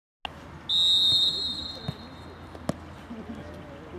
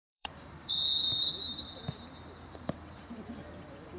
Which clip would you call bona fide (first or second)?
first